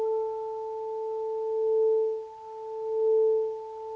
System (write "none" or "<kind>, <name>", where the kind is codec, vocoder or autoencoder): none